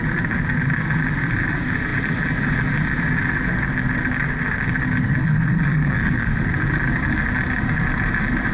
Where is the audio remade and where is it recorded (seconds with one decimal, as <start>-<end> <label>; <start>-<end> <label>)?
0.0-5.2 recorded; 5.2-6.5 remade; 6.5-8.5 recorded